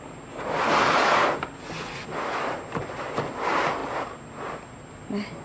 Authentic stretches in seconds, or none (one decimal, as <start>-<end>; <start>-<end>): 0.0-5.4